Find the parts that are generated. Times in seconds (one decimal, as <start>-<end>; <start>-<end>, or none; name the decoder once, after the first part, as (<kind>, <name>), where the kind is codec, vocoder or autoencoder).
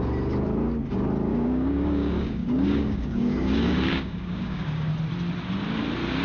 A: 1.3-4.9 (codec, DAC)